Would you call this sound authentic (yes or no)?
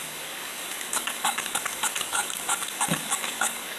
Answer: no